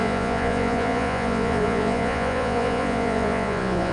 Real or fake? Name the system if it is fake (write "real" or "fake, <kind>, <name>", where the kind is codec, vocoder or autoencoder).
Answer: fake, vocoder, Vocos